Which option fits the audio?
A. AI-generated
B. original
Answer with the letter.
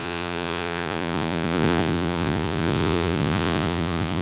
A